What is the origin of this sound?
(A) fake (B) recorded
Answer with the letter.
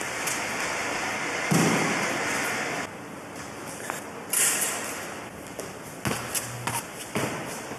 B